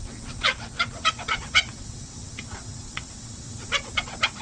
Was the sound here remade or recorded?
remade